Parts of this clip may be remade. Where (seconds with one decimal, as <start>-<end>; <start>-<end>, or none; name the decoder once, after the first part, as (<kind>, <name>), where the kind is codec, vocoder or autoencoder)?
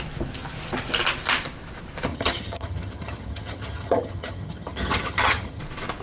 2.1-5.6 (vocoder, HiFi-GAN)